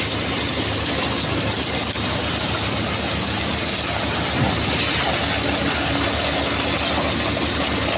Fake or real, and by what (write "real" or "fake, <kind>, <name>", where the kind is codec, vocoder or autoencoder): real